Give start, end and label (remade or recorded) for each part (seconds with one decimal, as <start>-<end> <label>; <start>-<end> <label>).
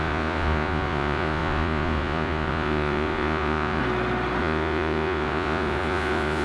0.0-3.8 remade; 3.8-4.4 recorded; 4.4-6.4 remade